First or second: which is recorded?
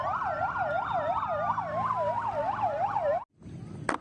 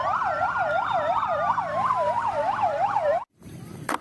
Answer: first